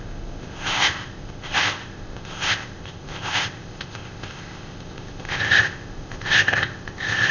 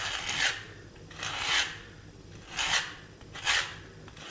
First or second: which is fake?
first